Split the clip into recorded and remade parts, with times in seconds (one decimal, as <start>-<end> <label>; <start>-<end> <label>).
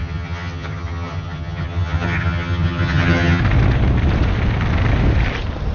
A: 0.0-3.4 remade; 3.4-5.7 recorded